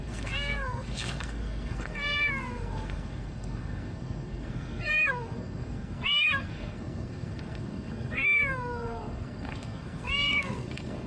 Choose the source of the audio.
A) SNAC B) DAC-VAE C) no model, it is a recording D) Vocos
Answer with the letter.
A